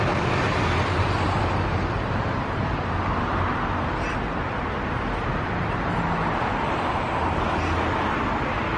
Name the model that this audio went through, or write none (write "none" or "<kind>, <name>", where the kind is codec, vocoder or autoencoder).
none